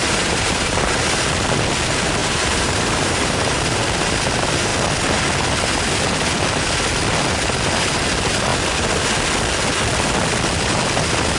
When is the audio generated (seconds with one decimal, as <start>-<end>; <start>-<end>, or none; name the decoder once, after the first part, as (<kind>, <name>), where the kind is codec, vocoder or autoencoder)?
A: 0.0-0.8 (vocoder, BigVGAN v2); 2.2-3.6